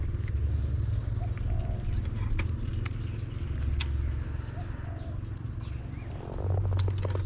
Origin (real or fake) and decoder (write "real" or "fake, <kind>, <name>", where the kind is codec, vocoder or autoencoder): real